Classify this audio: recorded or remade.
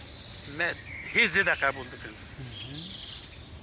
recorded